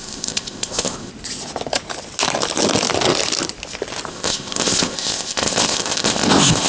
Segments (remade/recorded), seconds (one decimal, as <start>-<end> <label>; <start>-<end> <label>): 0.0-1.1 remade; 1.1-4.1 recorded; 4.1-6.7 remade